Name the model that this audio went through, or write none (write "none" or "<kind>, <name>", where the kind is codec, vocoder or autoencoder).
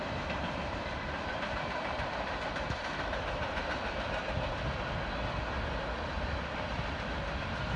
vocoder, BigVGAN v2